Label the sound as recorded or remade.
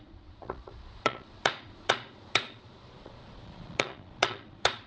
remade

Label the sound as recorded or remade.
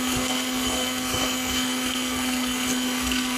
remade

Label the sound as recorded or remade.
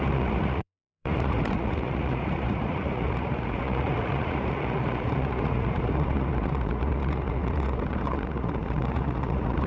remade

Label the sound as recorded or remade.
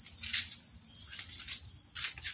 recorded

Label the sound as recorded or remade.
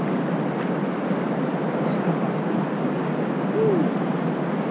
recorded